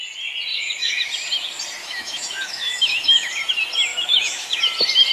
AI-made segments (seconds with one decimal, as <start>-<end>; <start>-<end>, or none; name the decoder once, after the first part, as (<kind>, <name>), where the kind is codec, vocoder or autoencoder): 0.5-1.1 (autoencoder, DAC-VAE); 1.8-3.3; 3.9-4.6